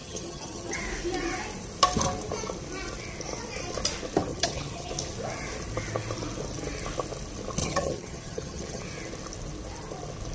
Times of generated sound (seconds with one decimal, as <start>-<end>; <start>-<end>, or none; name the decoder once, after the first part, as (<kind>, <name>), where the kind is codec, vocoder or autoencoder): 0.0-0.8 (vocoder, HiFi-GAN); 4.3-4.9; 7.6-8.8